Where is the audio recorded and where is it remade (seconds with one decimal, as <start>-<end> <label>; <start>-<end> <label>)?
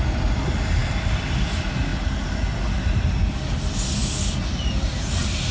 0.0-5.5 recorded